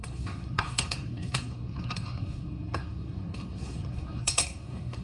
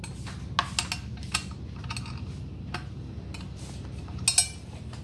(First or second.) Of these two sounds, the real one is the second